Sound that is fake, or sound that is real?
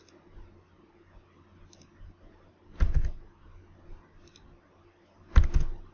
real